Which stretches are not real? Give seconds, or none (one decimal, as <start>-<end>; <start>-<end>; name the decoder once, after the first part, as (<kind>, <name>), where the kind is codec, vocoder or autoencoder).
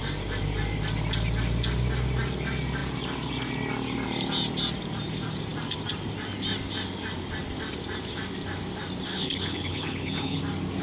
9.1-10.4 (codec, HILCodec)